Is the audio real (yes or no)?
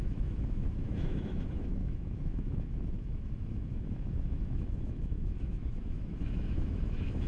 no